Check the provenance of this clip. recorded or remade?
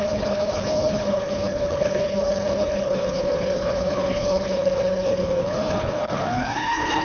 remade